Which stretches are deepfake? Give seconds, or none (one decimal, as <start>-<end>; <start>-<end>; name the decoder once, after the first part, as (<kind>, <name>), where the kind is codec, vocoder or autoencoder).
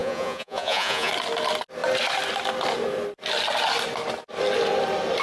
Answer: 0.0-1.1 (vocoder, Vocos)